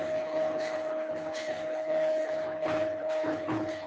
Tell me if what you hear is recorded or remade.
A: remade